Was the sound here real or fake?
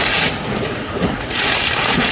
fake